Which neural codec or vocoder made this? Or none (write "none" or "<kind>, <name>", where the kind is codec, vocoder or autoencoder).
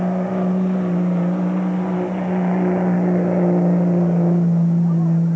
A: none